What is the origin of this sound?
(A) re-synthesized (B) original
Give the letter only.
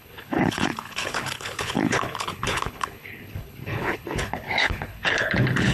A